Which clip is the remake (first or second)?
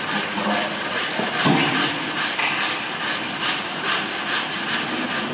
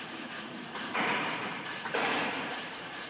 second